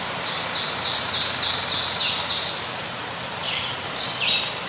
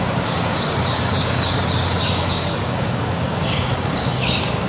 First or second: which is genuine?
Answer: first